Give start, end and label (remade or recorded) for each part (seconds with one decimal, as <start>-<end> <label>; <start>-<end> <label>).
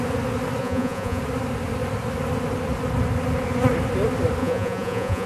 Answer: 0.0-0.6 recorded; 0.6-1.2 remade; 1.2-4.4 recorded; 4.4-5.3 remade